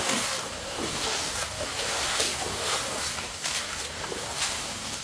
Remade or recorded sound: remade